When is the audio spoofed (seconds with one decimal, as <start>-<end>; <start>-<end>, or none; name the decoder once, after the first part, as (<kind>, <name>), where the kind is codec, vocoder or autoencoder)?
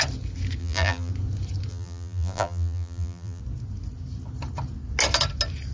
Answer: 0.6-1.1 (vocoder, BigVGAN v2); 1.7-3.4